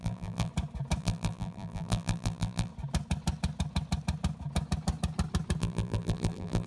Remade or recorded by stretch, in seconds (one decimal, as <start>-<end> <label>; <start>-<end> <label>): 0.0-0.5 remade; 0.5-1.0 recorded; 1.0-2.7 remade; 2.7-5.6 recorded; 5.6-6.7 remade